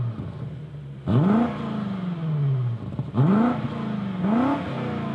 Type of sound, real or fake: real